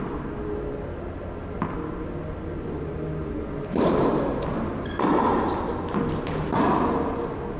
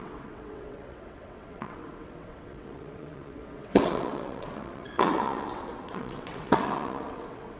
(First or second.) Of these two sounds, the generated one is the second